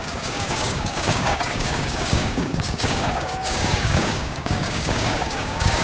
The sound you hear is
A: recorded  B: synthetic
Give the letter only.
B